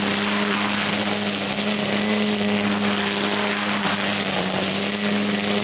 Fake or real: real